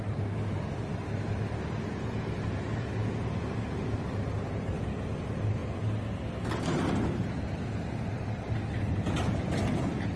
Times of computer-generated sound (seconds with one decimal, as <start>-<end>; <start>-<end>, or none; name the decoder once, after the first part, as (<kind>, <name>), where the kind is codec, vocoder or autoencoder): none